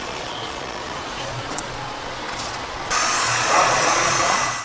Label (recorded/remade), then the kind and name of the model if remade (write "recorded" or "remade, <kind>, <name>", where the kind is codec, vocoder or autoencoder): remade, vocoder, Vocos